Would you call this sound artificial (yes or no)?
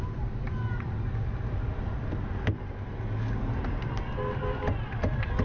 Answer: no